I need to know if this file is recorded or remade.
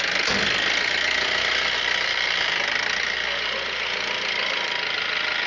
recorded